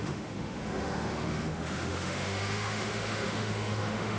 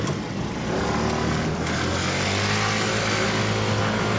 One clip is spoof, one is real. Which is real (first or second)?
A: second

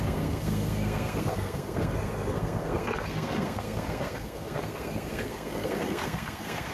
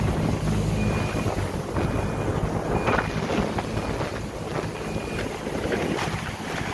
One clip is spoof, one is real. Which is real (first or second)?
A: second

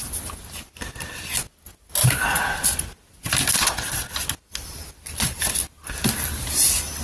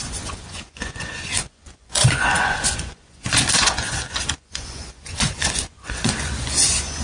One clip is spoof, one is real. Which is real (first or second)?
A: first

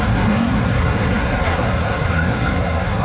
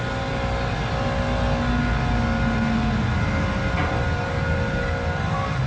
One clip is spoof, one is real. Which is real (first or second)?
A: second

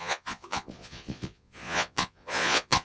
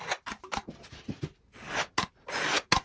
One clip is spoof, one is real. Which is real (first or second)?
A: second